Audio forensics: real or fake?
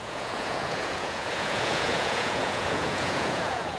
fake